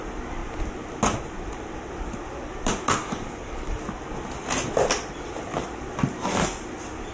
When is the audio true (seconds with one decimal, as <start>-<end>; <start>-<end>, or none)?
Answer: 0.0-3.0; 3.8-7.1